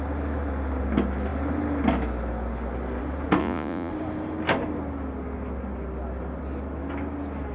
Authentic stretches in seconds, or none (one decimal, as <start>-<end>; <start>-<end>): 0.0-3.4; 3.9-7.5